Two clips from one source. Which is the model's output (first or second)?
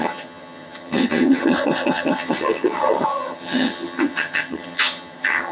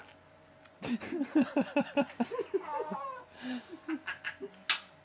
first